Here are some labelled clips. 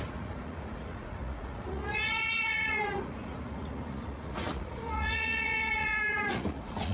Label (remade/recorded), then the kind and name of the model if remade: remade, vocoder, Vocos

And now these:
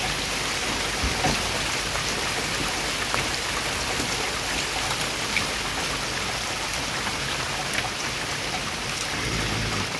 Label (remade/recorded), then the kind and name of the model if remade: recorded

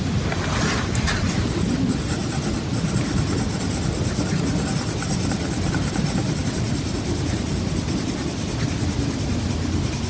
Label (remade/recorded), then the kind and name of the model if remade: recorded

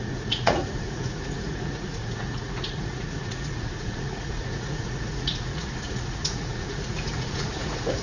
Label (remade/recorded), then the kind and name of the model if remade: remade, vocoder, Vocos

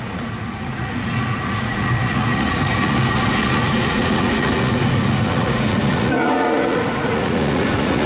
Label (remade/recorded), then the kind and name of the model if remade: remade, vocoder, Vocos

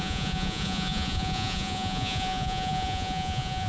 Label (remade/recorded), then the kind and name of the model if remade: remade, vocoder, Vocos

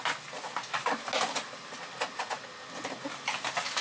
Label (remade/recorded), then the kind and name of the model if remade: recorded